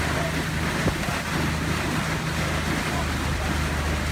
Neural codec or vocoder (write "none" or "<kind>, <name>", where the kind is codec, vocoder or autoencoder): none